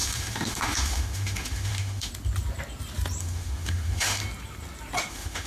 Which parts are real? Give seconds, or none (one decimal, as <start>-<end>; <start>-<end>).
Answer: 2.1-3.2; 4.2-5.1